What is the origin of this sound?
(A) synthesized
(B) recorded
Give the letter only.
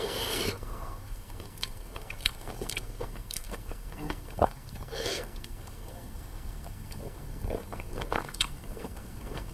A